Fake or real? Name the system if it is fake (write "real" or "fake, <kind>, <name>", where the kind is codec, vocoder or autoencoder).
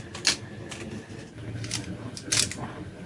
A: real